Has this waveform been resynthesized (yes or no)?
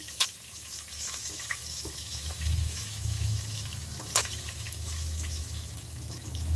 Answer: yes